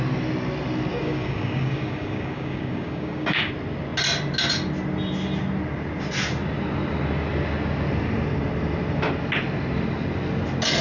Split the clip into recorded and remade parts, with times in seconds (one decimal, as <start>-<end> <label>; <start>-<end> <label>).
0.0-0.9 recorded; 0.9-3.5 remade; 3.5-10.8 recorded